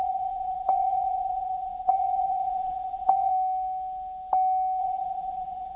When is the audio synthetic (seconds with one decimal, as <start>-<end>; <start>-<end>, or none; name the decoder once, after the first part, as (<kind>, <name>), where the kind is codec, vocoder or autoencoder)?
0.0-3.3 (vocoder, WaveNeXt); 4.8-5.8